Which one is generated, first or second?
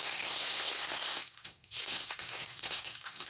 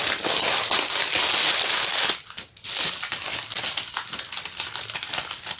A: first